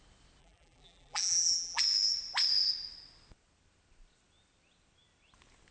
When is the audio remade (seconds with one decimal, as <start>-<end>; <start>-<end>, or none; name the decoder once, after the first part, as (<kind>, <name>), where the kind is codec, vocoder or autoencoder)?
0.4-1.8 (vocoder, BigVGAN v2)